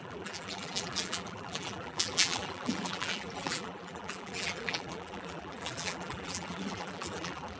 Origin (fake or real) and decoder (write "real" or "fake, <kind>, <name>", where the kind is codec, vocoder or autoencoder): fake, vocoder, BigVGAN v2